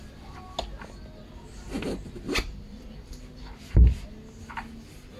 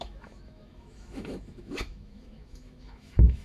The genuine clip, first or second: first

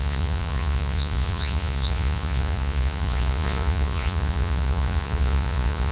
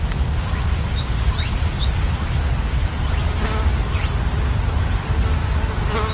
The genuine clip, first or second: second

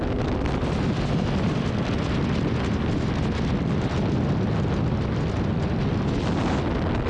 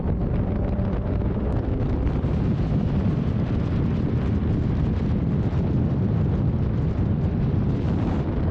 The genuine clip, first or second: first